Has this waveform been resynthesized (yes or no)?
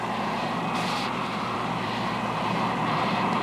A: yes